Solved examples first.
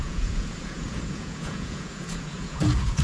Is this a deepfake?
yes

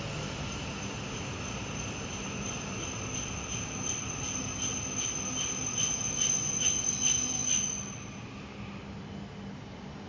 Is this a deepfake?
no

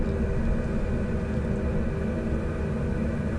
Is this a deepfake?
no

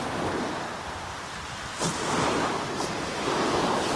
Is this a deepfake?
no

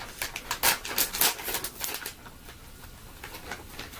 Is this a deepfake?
no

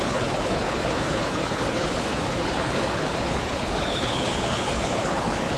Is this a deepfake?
yes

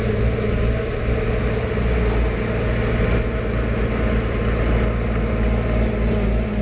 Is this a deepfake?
no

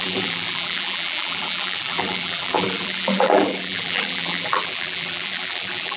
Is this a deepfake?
yes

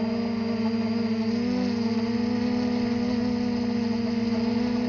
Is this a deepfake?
no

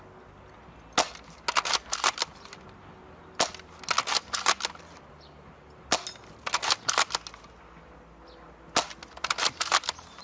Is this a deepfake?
no